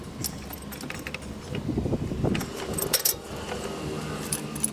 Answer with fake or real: real